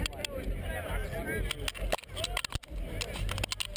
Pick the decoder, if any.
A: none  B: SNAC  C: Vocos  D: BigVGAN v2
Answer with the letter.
A